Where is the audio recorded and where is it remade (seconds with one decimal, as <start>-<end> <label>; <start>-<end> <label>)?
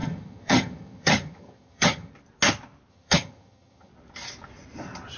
0.0-2.1 remade; 2.1-2.9 recorded; 2.9-3.9 remade; 3.9-5.2 recorded